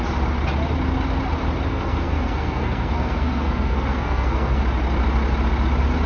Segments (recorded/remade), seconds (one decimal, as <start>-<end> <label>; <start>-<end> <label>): 0.0-1.7 recorded; 1.7-4.6 remade; 4.6-6.1 recorded